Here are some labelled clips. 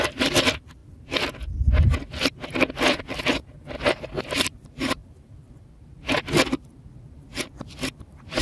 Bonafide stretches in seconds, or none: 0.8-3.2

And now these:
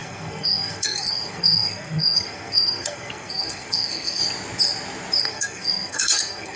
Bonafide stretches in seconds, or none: 4.2-5.2

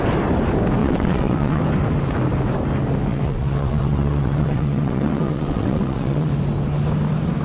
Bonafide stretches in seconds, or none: 0.0-0.8; 1.6-3.1; 6.3-7.4

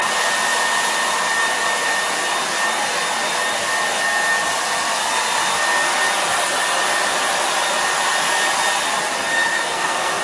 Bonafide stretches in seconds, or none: 0.0-9.3

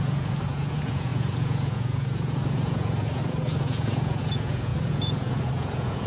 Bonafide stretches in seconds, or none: none

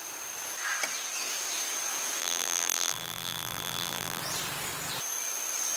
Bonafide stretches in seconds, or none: 0.0-2.2; 4.2-5.8

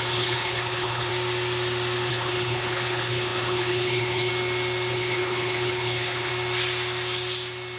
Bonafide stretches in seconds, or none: 1.1-2.1; 4.3-4.9; 6.3-7.8